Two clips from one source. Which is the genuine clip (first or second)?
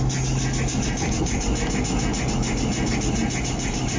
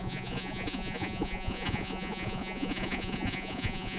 first